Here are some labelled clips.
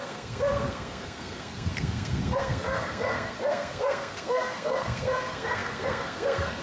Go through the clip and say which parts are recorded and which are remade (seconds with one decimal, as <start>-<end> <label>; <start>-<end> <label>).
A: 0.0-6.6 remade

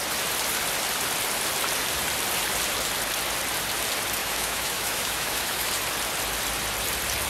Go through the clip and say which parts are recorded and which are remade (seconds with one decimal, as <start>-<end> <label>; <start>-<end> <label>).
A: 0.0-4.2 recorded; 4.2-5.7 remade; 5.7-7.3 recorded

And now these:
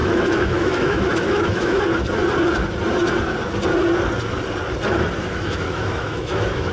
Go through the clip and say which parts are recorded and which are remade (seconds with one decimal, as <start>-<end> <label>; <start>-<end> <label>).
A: 0.0-1.8 remade; 1.8-5.2 recorded; 5.2-6.7 remade

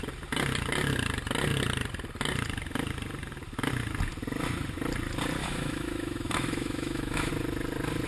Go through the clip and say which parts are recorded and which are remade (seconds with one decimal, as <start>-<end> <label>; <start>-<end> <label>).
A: 0.0-5.4 recorded; 5.4-7.3 remade; 7.3-8.1 recorded